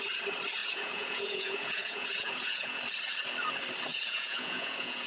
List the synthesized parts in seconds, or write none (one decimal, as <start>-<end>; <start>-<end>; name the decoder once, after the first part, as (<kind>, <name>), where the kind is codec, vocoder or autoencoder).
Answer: 0.6-2.8 (vocoder, Vocos); 3.9-5.1